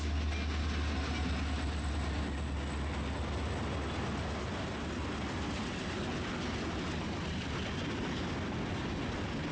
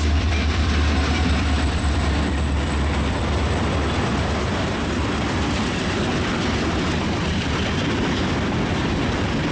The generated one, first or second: second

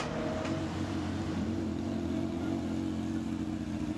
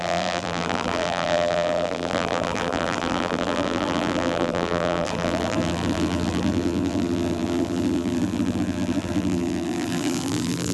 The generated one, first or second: second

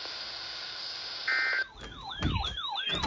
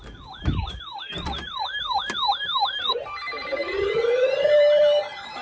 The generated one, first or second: second